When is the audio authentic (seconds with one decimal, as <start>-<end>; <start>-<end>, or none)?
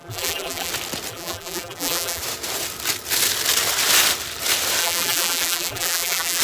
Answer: 0.7-1.1; 2.2-4.8